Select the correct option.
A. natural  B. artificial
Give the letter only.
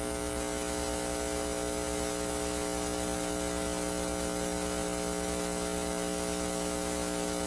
A